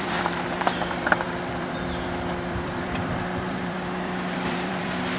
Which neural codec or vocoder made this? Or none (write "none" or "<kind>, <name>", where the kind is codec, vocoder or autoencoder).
vocoder, BigVGAN v2